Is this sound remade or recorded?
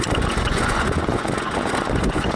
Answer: remade